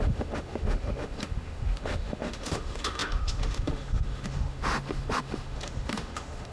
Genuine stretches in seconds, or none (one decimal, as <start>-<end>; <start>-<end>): none